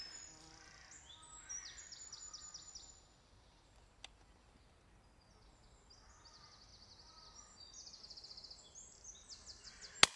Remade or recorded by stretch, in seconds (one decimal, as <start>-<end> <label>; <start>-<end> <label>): 0.0-10.2 recorded